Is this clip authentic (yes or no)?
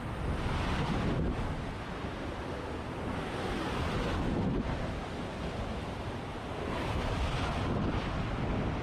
yes